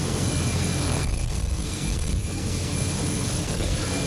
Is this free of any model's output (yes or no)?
no